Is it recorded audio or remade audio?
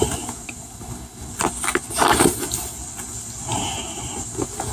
recorded